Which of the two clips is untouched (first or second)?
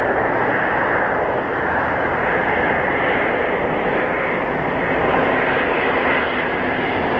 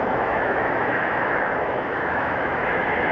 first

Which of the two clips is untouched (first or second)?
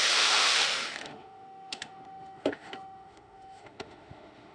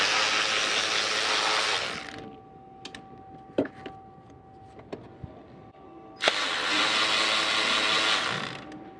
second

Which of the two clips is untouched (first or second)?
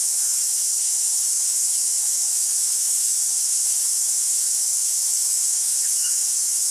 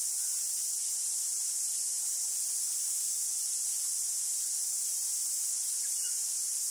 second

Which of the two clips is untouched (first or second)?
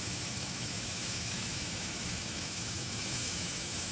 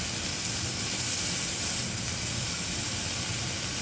second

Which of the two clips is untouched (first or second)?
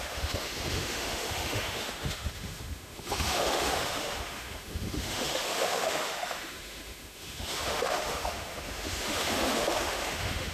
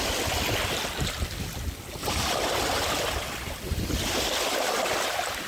second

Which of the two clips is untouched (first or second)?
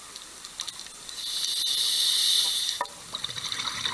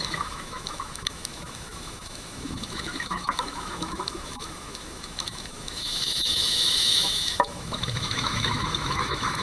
first